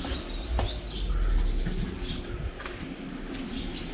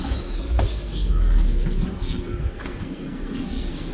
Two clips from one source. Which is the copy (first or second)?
second